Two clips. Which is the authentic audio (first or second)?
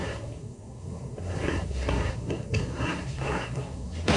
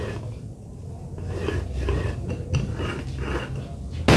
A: second